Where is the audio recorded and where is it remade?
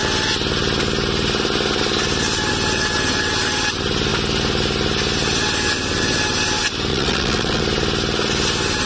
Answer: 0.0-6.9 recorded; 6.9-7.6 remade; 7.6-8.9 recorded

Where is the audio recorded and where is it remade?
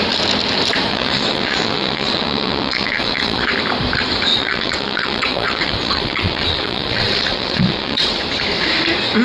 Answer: 0.0-0.9 recorded; 0.9-3.5 remade; 3.5-4.3 recorded; 4.3-8.2 remade; 8.2-9.2 recorded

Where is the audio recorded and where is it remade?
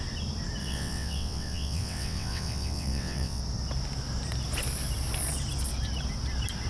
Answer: 0.0-0.6 recorded; 0.6-3.4 remade; 3.4-6.7 recorded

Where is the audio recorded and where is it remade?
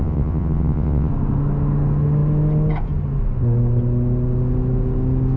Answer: 0.0-1.1 remade; 1.1-5.4 recorded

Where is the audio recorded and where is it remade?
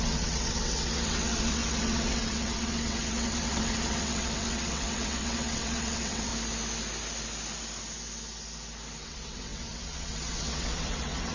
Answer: 0.0-6.3 remade; 6.3-9.0 recorded; 9.0-11.3 remade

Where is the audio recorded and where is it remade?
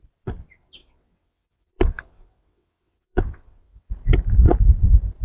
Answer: 0.0-0.8 recorded; 0.8-3.9 remade; 3.9-5.2 recorded